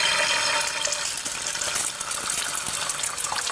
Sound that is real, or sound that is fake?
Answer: real